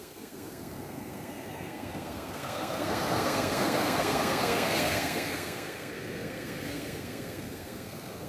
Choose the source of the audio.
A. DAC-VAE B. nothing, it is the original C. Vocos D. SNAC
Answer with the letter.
D